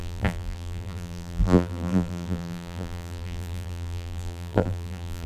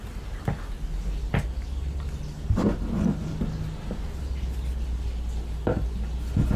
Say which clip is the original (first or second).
second